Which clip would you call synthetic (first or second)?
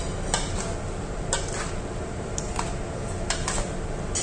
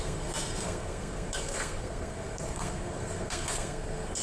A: second